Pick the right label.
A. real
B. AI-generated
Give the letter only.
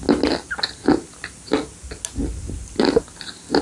A